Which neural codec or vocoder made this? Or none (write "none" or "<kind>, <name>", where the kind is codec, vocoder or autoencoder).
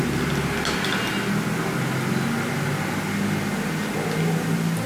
none